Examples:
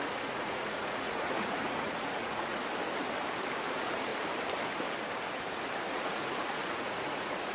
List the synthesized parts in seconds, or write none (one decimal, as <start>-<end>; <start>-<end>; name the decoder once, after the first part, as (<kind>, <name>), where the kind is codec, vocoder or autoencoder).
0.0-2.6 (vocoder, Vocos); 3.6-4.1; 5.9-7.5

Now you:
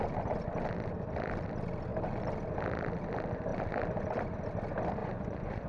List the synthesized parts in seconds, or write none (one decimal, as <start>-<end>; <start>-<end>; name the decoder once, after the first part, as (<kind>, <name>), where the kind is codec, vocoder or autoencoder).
5.0-5.7 (vocoder, Vocos)

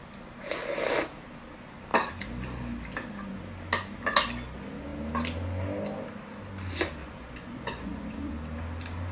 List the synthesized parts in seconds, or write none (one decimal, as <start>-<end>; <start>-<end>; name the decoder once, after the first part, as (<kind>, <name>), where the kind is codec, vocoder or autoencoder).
7.0-8.3 (vocoder, Vocos)

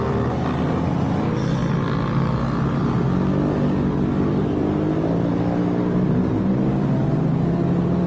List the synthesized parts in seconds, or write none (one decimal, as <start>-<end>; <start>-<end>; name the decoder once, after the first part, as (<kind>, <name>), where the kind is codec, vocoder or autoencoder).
none

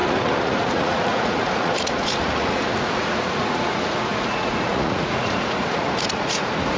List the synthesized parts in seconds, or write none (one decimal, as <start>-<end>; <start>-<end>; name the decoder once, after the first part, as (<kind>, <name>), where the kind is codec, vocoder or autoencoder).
0.0-6.8 (vocoder, Vocos)

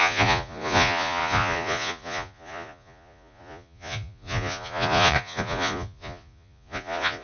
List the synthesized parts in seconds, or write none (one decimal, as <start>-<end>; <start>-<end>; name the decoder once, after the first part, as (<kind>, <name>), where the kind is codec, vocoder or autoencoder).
0.0-7.2 (vocoder, Vocos)

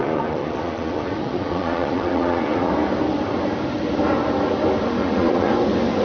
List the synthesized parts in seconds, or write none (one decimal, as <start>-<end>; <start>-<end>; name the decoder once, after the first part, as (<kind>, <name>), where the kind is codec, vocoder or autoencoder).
0.0-2.7 (vocoder, Vocos); 5.0-5.5